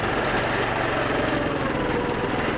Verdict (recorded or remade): recorded